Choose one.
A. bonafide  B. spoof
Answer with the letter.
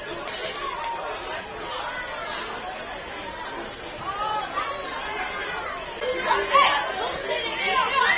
A